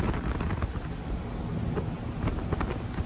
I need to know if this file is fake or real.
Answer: real